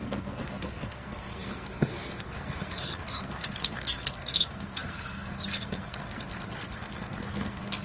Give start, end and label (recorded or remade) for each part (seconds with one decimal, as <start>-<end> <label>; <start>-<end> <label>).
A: 0.0-7.8 remade